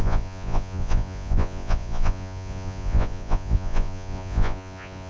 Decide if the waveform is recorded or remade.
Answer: remade